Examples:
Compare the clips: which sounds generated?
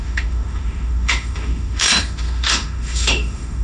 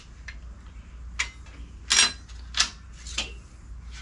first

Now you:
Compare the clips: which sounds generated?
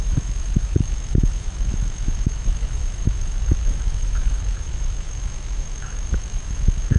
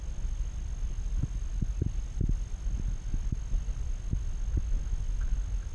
first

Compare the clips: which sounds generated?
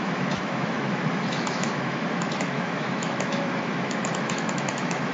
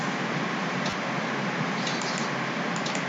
first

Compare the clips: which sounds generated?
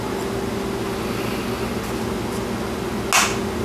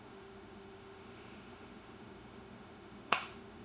second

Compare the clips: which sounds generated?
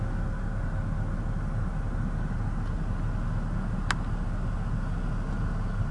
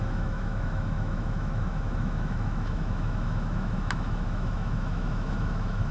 second